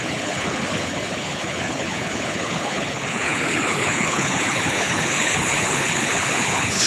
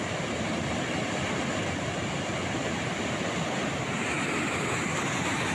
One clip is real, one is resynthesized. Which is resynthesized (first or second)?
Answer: first